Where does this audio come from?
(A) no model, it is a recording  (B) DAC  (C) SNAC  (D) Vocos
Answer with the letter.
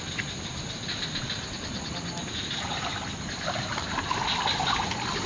A